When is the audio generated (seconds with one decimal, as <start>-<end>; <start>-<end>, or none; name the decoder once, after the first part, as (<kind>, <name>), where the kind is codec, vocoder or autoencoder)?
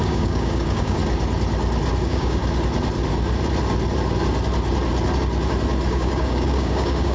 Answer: 0.0-1.0 (codec, DAC); 2.0-2.4; 5.9-7.1